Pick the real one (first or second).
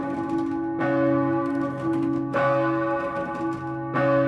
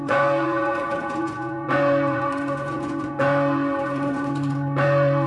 first